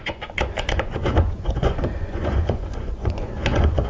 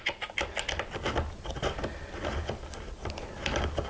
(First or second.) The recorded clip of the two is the second